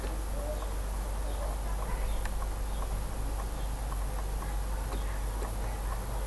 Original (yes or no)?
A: yes